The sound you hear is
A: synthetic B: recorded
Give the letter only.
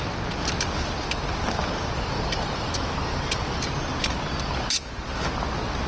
B